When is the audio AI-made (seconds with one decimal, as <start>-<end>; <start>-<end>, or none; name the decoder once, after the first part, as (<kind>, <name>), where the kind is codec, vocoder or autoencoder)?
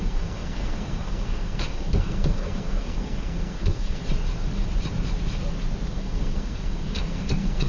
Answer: 0.0-4.0 (codec, SNAC); 5.9-7.7